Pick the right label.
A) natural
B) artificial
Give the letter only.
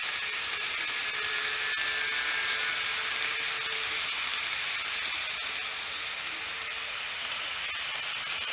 A